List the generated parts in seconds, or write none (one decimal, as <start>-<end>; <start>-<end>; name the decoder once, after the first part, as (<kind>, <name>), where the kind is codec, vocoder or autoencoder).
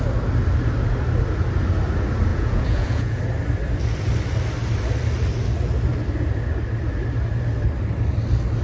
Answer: 2.3-3.2 (vocoder, Vocos)